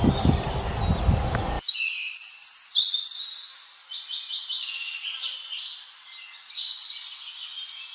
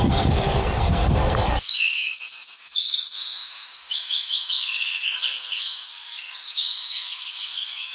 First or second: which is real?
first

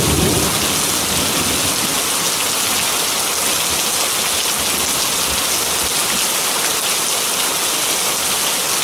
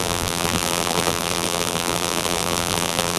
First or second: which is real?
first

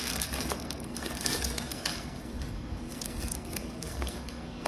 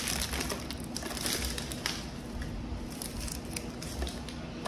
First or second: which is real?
second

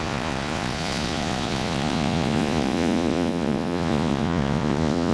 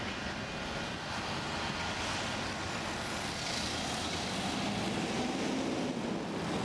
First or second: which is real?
second